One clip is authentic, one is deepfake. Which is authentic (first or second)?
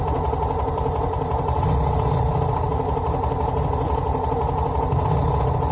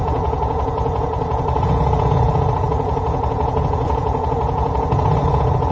first